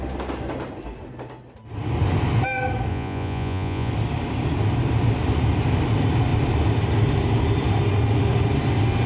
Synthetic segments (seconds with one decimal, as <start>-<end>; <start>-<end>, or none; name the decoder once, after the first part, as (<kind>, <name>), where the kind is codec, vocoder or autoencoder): 2.9-3.9 (vocoder, Vocos)